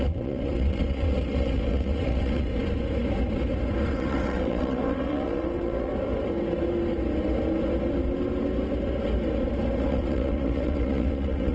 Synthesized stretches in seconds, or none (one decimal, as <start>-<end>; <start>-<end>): 0.0-2.5; 3.9-5.9; 9.8-11.5